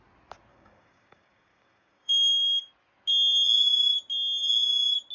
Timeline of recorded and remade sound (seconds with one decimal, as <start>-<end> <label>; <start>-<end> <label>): 0.0-0.5 recorded; 0.5-2.6 remade; 2.6-5.1 recorded